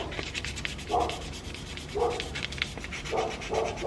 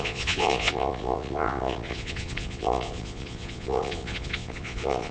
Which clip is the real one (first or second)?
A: first